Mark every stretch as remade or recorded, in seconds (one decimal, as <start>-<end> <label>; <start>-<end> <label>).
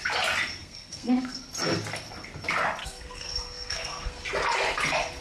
0.0-0.6 recorded; 0.6-1.4 remade; 1.4-2.8 recorded; 2.8-4.2 remade; 4.2-5.2 recorded